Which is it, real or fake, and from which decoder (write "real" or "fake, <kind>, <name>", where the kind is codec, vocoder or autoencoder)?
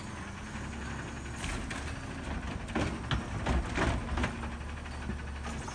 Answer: real